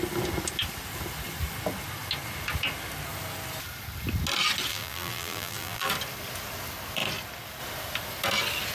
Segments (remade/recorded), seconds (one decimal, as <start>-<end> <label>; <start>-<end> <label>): 0.0-4.7 recorded; 4.7-5.9 remade; 5.9-8.7 recorded